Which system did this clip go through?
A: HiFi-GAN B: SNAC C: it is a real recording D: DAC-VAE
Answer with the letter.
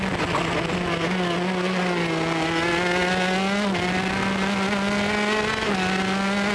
C